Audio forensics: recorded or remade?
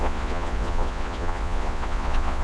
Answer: remade